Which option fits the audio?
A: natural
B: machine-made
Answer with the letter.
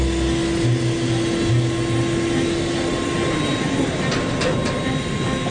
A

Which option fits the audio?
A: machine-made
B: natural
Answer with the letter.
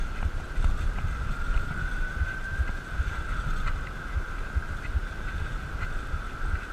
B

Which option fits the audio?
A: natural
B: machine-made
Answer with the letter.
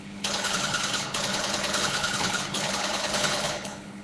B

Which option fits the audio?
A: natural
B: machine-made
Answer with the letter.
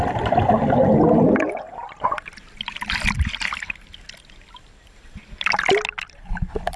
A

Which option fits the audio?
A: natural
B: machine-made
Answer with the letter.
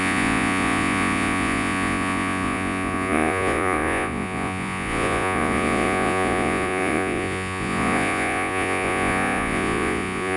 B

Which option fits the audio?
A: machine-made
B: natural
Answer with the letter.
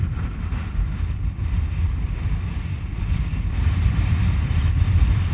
B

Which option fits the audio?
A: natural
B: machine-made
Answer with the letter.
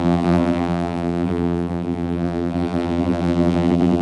B